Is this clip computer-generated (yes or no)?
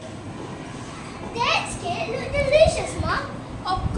no